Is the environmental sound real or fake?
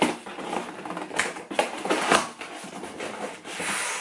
real